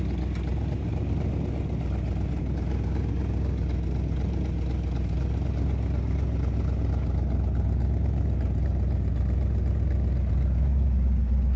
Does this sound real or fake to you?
real